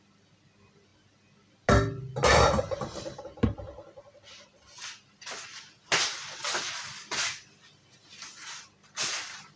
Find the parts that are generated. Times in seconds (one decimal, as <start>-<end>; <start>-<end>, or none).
none